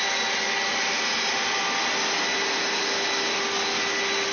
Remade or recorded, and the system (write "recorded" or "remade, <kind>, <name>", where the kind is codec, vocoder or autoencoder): recorded